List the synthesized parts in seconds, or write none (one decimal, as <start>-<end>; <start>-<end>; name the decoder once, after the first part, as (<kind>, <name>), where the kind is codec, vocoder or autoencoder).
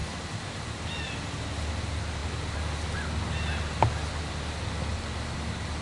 0.0-0.6 (vocoder, BigVGAN v2)